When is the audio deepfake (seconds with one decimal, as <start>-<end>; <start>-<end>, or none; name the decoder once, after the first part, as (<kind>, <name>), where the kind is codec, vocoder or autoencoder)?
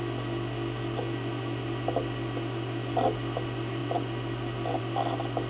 none